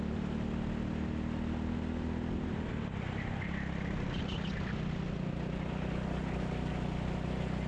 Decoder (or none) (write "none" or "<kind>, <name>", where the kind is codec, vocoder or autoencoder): none